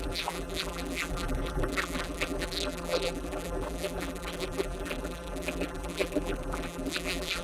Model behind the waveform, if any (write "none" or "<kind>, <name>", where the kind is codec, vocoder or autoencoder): vocoder, BigVGAN v2